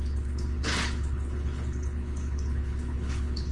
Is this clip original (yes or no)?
no